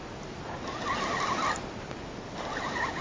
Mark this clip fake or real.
real